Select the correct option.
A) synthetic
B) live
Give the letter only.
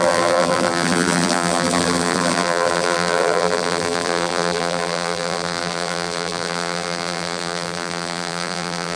A